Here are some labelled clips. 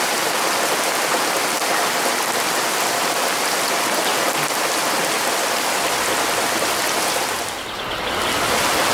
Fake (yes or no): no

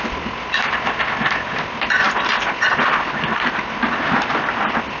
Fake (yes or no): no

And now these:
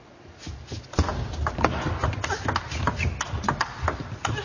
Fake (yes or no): no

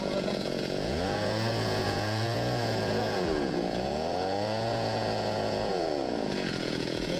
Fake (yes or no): yes